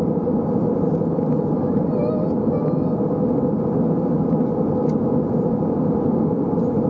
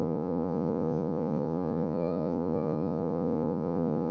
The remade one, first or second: second